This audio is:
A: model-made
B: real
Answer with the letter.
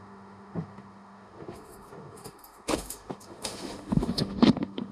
A